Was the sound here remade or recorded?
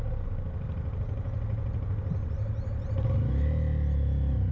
recorded